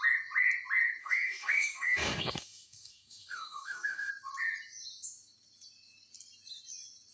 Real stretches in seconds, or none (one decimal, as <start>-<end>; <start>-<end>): 0.0-1.0; 4.1-7.1